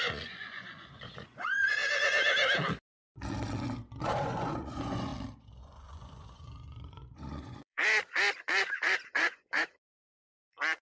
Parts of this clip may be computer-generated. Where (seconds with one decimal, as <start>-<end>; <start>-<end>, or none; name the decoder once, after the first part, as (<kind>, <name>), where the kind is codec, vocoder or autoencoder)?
0.0-1.8 (vocoder, Vocos); 4.0-5.1; 5.6-7.8; 8.4-10.8